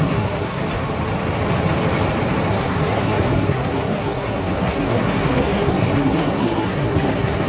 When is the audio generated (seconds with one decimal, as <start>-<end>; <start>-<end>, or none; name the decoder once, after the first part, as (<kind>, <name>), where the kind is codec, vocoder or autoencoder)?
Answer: 0.0-0.6 (codec, SNAC); 2.5-7.5